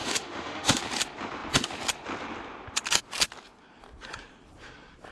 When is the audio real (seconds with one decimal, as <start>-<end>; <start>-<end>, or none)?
0.8-5.1